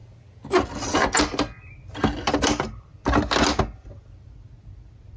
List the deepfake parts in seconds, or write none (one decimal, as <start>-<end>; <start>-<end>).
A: none